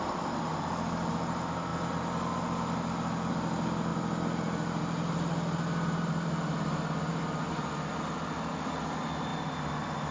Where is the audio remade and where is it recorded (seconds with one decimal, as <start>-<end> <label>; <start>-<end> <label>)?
0.0-10.1 recorded

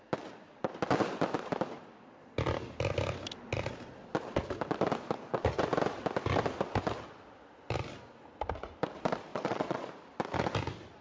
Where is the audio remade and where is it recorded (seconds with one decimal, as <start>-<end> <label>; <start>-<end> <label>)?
0.0-9.3 recorded; 9.3-9.9 remade; 9.9-11.0 recorded

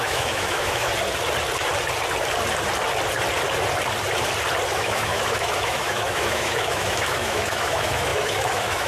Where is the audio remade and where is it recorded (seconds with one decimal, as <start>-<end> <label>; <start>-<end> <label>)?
0.0-0.9 remade; 0.9-4.7 recorded; 4.7-8.9 remade

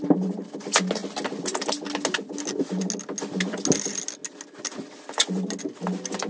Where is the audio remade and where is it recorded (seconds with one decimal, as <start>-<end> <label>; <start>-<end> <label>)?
0.0-6.3 recorded

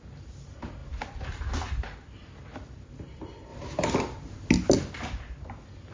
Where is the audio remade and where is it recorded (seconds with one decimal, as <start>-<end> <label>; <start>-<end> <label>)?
0.0-5.9 recorded

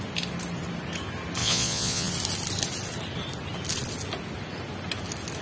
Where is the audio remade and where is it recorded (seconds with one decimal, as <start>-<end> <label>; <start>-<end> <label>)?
0.0-1.4 recorded; 1.4-2.1 remade; 2.1-5.4 recorded

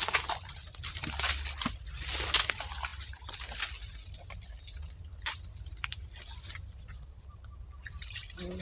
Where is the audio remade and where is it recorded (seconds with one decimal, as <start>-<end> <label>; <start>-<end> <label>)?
0.0-8.6 recorded

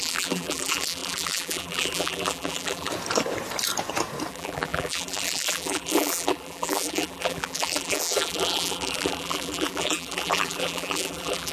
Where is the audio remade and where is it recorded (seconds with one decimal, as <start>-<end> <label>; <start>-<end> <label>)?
0.0-2.9 remade; 2.9-4.3 recorded; 4.3-11.5 remade